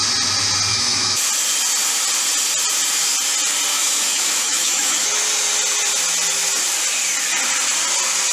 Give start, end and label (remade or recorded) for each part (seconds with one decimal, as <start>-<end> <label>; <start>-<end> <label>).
0.0-0.7 recorded; 0.7-1.2 remade; 1.2-3.7 recorded; 3.7-5.1 remade; 5.1-8.3 recorded